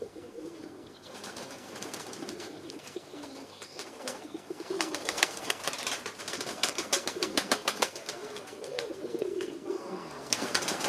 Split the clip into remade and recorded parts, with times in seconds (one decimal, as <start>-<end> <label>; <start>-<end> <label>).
0.0-5.6 remade; 5.6-6.2 recorded; 6.2-10.9 remade